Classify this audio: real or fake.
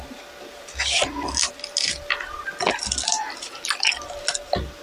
real